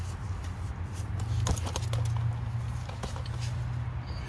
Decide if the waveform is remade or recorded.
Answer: recorded